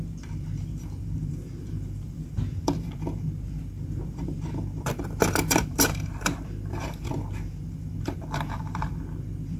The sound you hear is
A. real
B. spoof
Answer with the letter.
B